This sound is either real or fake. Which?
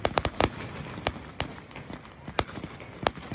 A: real